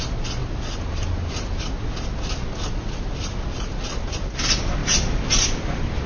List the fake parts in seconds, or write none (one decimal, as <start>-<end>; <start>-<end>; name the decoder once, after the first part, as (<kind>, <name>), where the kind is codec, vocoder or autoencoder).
none